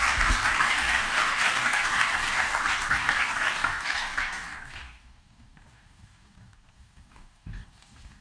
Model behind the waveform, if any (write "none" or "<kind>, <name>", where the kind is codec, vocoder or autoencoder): codec, DAC